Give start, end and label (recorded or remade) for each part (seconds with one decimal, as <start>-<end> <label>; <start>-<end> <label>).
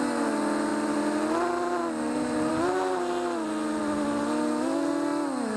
0.0-5.6 recorded